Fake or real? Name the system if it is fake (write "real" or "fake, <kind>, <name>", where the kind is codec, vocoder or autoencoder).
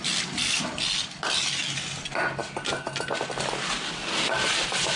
real